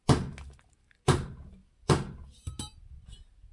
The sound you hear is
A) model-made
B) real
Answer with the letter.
B